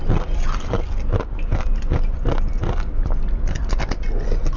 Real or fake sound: real